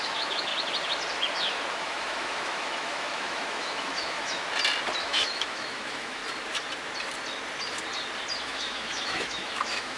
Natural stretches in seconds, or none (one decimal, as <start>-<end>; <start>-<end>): 0.5-1.7; 4.4-5.0; 6.2-8.4